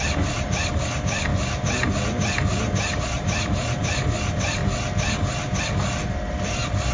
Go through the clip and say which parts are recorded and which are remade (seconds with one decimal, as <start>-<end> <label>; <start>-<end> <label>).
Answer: 0.0-6.9 recorded